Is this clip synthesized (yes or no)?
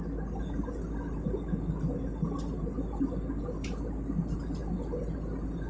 no